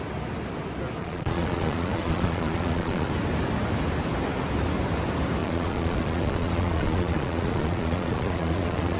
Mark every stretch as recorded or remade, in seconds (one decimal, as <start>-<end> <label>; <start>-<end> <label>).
0.0-1.0 recorded; 1.0-3.1 remade; 3.1-5.4 recorded; 5.4-9.0 remade